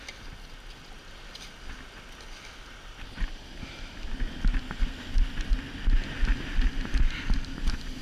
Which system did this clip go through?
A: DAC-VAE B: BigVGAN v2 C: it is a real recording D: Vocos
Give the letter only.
C